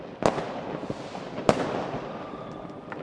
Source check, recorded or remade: recorded